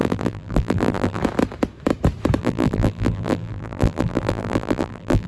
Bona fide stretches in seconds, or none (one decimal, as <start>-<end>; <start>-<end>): 1.2-2.4